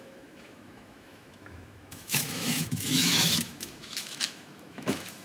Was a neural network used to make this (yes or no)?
yes